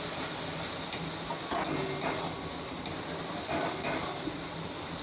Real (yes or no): yes